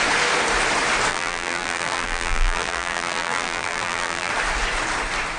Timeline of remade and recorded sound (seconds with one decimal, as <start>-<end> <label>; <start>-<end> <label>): 0.0-1.1 recorded; 1.1-4.3 remade; 4.3-5.4 recorded